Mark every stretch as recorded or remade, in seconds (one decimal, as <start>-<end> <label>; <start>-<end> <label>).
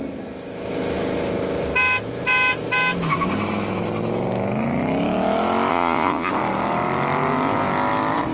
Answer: 0.0-5.7 recorded; 5.7-6.3 remade; 6.3-8.3 recorded